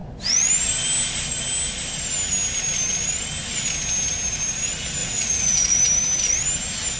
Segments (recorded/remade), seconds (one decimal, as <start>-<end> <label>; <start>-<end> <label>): 0.0-5.0 recorded; 5.0-5.8 remade; 5.8-7.0 recorded